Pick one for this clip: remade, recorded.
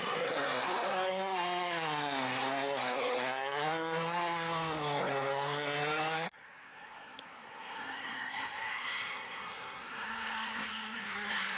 remade